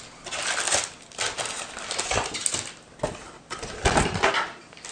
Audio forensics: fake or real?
real